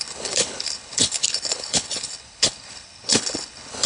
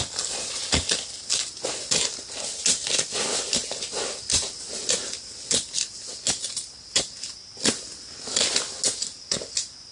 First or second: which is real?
second